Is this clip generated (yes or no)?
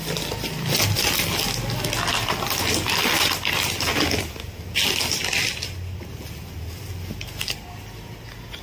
no